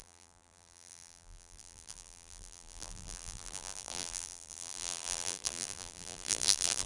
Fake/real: fake